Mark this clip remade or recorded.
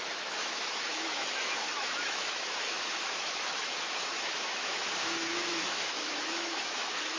remade